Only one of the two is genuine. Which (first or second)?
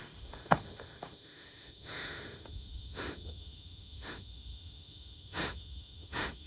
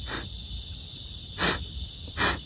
second